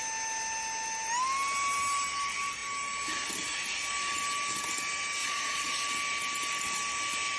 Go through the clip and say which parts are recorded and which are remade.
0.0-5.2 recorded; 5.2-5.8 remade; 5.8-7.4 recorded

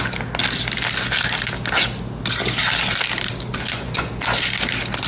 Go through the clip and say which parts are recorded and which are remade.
0.0-3.5 recorded; 3.5-4.1 remade; 4.1-5.1 recorded

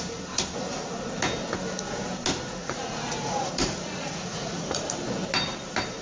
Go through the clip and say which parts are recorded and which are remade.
0.0-2.6 recorded; 2.6-4.8 remade; 4.8-6.0 recorded

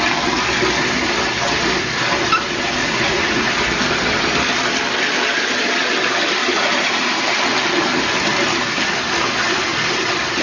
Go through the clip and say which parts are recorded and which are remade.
0.0-2.8 recorded; 2.8-3.5 remade; 3.5-6.4 recorded; 6.4-7.2 remade; 7.2-10.4 recorded